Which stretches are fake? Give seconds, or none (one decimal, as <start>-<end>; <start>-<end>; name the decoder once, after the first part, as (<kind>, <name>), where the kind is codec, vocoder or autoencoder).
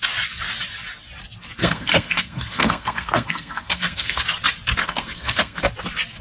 1.6-4.2 (codec, SNAC); 4.8-5.6